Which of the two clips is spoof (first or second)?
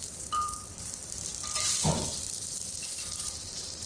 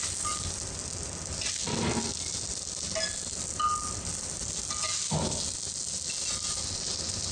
first